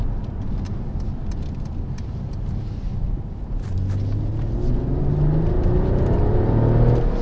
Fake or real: real